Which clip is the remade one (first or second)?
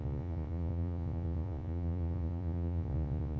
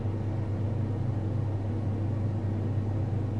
first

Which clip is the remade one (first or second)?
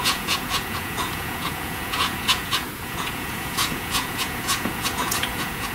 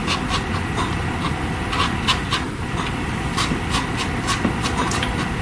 first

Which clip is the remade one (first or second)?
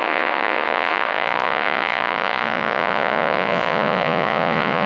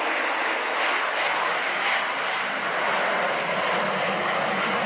first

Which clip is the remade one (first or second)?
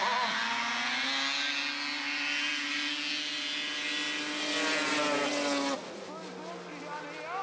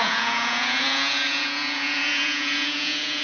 second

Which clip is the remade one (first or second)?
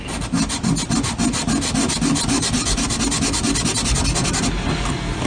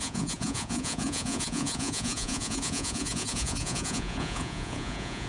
second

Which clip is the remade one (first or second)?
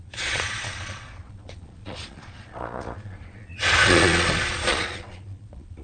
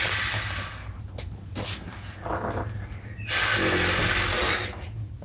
first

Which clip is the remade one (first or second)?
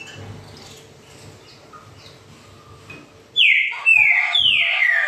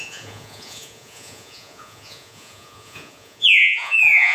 second